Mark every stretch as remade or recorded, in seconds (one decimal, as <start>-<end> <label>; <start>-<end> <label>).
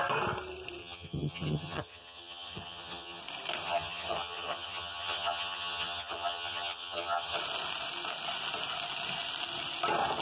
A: 0.0-0.8 recorded; 0.8-3.2 remade; 3.2-3.6 recorded; 3.6-7.4 remade; 7.4-10.2 recorded